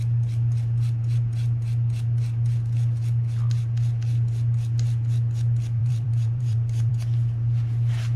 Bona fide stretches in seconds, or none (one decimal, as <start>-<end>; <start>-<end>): 0.0-5.8; 6.9-8.2